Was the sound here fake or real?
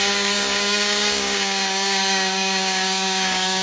fake